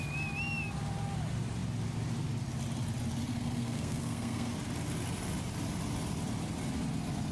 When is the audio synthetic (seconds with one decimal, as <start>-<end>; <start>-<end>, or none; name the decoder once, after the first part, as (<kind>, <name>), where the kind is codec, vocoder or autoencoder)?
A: 3.3-4.5 (codec, SNAC)